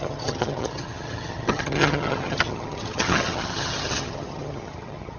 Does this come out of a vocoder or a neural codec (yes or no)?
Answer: yes